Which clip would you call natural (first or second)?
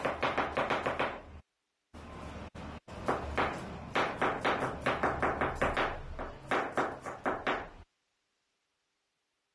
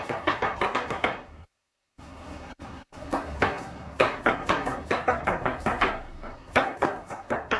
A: first